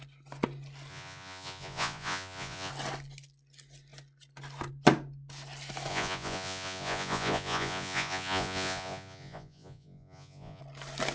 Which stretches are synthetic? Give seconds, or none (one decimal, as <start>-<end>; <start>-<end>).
0.9-2.7; 5.9-10.6